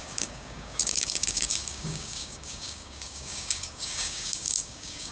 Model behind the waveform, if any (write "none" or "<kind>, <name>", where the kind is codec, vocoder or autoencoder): codec, DAC